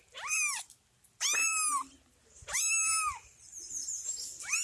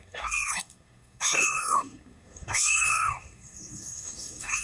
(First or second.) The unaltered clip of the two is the first